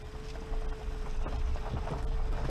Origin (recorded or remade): recorded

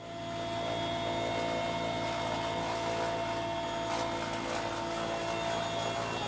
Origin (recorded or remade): recorded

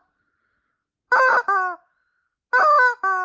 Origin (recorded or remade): recorded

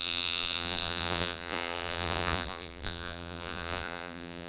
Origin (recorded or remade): remade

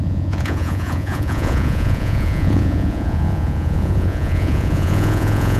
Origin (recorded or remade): remade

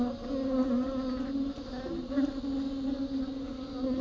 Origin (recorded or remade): recorded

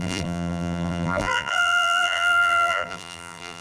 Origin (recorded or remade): remade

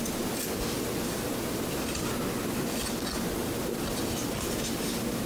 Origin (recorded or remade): recorded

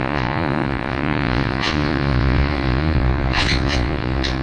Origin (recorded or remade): remade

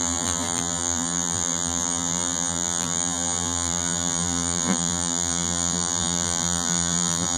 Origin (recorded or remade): remade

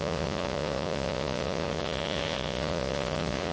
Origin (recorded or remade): remade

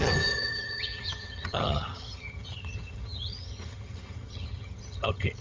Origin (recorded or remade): remade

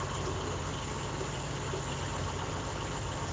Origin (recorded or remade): recorded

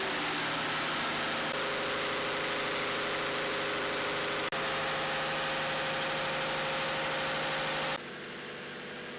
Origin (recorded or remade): recorded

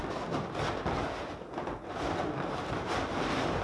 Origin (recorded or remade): recorded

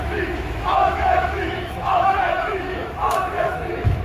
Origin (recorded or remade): remade